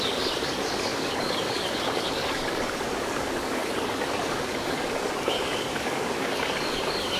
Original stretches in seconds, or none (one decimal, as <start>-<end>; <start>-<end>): none